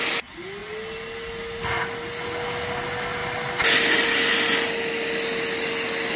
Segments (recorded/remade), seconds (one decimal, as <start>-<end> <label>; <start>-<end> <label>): 0.0-6.2 recorded